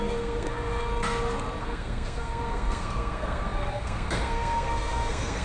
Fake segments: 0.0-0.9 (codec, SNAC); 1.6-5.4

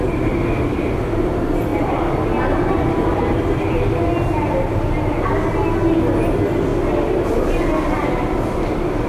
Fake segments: none

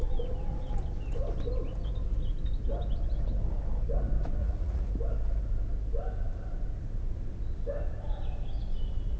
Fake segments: 4.4-4.9 (vocoder, Vocos)

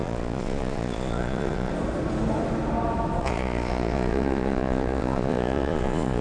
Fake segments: 0.0-1.7 (vocoder, Vocos); 3.2-6.2

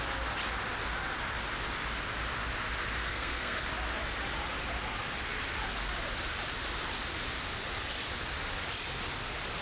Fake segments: 3.1-3.6 (codec, SNAC)

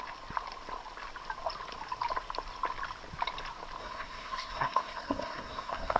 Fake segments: 3.8-6.0 (codec, SNAC)